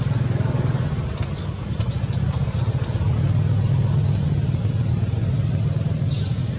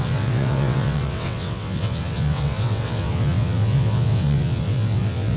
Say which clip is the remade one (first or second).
second